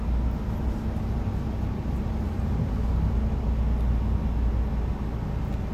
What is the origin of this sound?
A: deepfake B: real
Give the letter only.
B